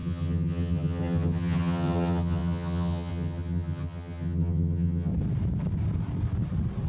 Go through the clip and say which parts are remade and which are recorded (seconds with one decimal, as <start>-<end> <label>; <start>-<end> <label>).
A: 0.0-5.1 remade; 5.1-6.9 recorded